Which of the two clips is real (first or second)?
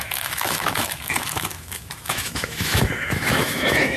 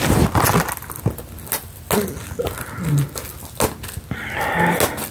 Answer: second